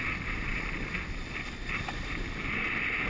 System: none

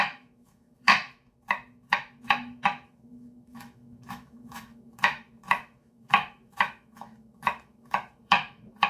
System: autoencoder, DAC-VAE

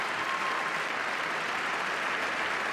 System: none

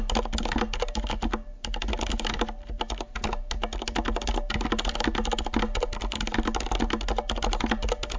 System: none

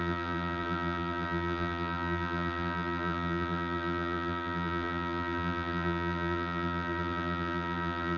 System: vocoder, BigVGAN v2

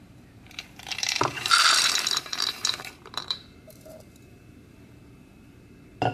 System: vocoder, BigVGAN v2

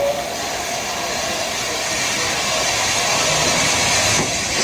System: none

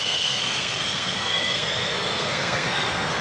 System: codec, SNAC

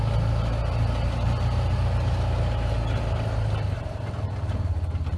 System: none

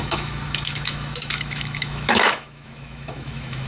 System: autoencoder, DAC-VAE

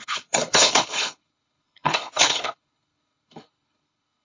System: codec, HILCodec